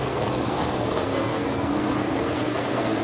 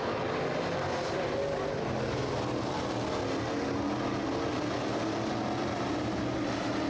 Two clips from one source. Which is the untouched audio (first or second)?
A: second